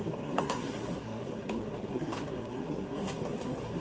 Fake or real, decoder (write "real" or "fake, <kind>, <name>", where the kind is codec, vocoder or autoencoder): fake, codec, SNAC